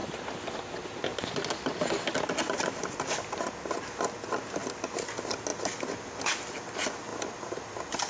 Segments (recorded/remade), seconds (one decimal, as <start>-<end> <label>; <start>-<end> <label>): 0.0-8.1 recorded